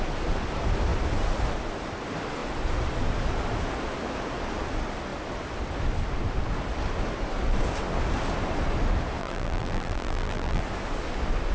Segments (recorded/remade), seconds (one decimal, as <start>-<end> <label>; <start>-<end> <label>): 0.0-9.2 recorded; 9.2-10.6 remade; 10.6-11.5 recorded